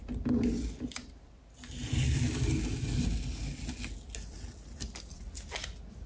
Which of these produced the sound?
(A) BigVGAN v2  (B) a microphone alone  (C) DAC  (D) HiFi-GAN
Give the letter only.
B